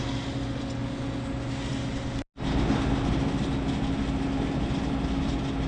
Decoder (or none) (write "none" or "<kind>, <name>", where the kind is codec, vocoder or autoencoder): none